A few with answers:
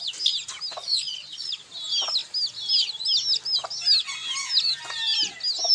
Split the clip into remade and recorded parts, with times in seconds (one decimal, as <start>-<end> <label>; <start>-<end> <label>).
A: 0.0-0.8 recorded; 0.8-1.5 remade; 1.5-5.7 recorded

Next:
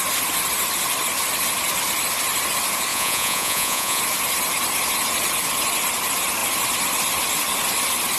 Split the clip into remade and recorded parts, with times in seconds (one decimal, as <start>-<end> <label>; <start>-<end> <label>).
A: 0.0-2.9 recorded; 2.9-4.0 remade; 4.0-8.2 recorded

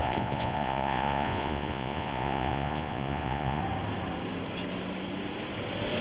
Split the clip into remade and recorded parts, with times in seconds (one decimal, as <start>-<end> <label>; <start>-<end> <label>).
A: 0.0-3.6 remade; 3.6-6.0 recorded

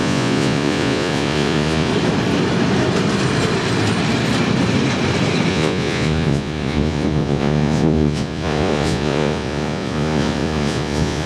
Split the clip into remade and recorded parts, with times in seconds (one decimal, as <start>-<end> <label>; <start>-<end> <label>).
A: 0.0-1.9 remade; 1.9-5.5 recorded; 5.5-11.3 remade

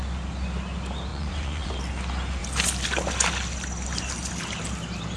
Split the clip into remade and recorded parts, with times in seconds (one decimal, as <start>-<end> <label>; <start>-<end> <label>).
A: 0.0-1.1 recorded; 1.1-1.7 remade; 1.7-5.2 recorded

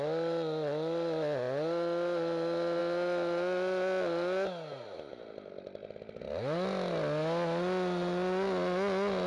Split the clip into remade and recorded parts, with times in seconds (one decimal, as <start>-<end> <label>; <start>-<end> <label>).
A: 0.0-9.3 recorded

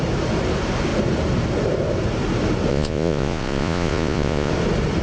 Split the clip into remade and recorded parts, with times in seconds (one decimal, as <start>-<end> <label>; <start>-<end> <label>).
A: 0.0-2.7 recorded; 2.7-4.5 remade; 4.5-5.0 recorded

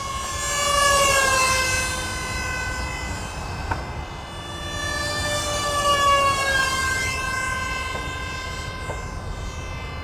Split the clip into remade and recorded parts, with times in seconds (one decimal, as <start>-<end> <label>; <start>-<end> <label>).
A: 0.0-10.0 recorded